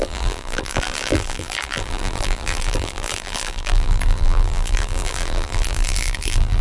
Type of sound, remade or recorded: remade